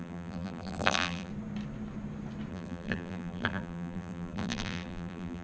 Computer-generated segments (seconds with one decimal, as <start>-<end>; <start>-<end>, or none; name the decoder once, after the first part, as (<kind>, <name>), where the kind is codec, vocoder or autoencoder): 0.0-1.3 (vocoder, BigVGAN v2); 2.5-5.4

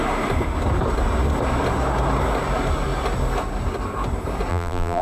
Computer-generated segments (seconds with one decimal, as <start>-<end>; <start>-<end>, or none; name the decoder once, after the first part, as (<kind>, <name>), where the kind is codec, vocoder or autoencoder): 4.5-5.0 (vocoder, BigVGAN v2)